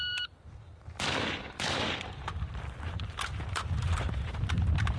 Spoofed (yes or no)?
yes